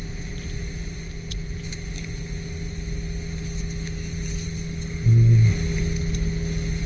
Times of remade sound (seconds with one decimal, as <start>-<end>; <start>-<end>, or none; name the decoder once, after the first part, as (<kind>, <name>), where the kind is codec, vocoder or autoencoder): none